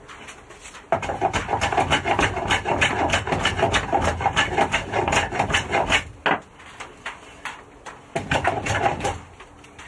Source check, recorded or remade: recorded